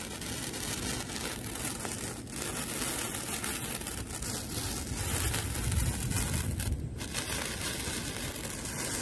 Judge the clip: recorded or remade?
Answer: recorded